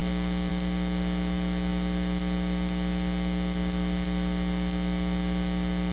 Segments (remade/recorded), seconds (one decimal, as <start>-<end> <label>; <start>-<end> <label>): 0.0-5.9 recorded